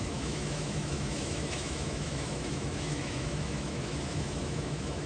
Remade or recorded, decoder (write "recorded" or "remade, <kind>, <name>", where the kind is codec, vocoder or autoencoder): remade, autoencoder, DAC-VAE